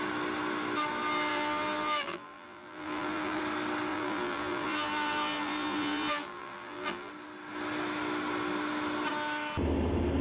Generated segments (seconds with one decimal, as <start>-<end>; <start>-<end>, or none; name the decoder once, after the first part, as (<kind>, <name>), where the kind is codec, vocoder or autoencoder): 1.3-3.4 (vocoder, BigVGAN v2); 3.9-7.1